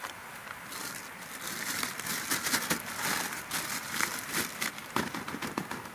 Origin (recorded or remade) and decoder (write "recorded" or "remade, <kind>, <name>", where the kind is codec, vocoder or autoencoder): recorded